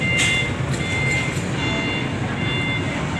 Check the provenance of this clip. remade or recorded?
recorded